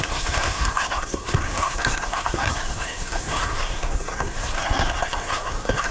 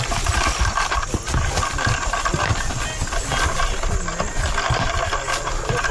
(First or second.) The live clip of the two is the second